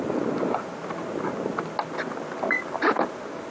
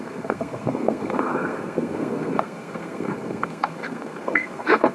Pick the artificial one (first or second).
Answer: second